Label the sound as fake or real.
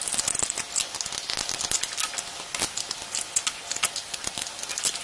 real